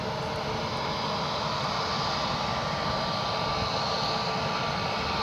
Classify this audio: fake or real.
real